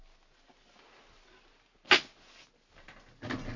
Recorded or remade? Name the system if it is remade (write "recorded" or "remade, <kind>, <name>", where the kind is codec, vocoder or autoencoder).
recorded